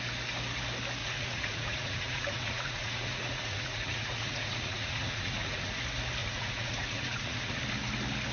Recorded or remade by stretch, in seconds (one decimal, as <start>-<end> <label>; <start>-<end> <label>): 0.0-1.0 recorded; 1.0-5.8 remade; 5.8-6.2 recorded; 6.2-7.6 remade; 7.6-8.3 recorded